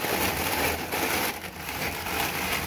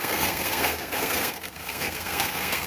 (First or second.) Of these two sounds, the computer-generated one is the second